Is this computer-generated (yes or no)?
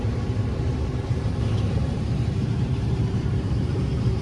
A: yes